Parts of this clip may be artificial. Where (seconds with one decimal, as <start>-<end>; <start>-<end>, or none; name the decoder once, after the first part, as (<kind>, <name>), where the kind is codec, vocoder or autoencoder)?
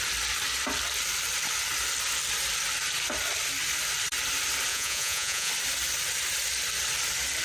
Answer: 4.7-5.5 (vocoder, Vocos)